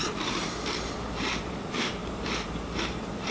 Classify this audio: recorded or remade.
remade